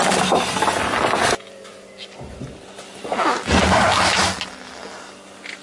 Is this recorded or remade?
recorded